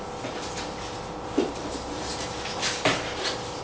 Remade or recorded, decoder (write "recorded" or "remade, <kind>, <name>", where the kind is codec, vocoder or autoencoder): recorded